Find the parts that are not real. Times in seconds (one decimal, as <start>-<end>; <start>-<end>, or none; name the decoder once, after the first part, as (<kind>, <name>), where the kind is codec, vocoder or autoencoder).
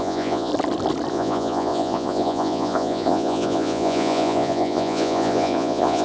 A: 0.0-0.5 (vocoder, Vocos); 1.1-6.0